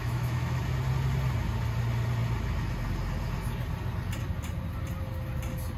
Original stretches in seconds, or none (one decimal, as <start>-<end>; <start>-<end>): 0.6-5.8